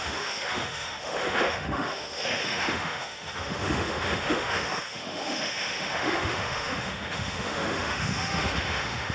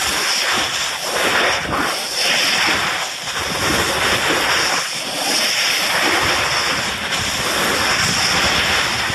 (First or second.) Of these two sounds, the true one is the second